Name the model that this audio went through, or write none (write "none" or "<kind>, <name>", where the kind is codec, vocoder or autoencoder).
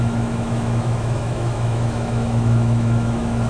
autoencoder, DAC-VAE